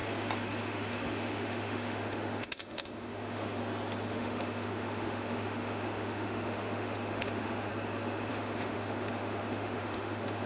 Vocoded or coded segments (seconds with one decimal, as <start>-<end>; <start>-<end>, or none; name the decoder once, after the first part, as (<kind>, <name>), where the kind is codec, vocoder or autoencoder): 0.6-3.6 (autoencoder, DAC-VAE); 4.1-7.7; 8.3-10.5